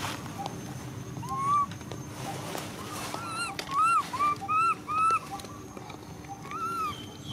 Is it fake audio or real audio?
real